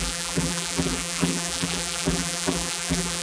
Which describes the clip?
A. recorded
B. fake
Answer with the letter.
B